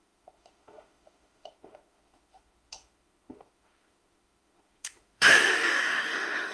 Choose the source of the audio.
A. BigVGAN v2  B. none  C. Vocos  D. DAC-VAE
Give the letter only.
D